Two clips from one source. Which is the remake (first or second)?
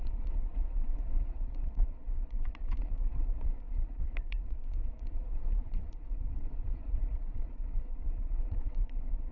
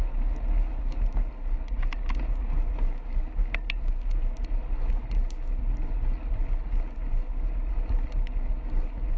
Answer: first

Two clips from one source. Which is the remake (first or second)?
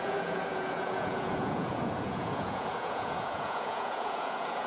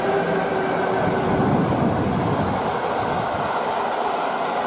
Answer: first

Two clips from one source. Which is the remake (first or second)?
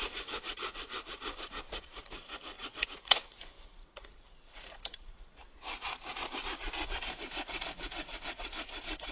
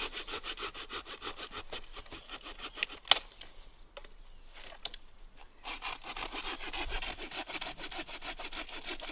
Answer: first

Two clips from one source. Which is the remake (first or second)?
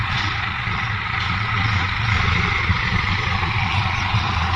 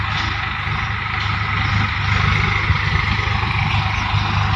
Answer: first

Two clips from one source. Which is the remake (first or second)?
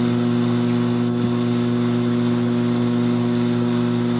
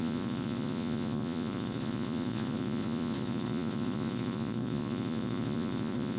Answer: second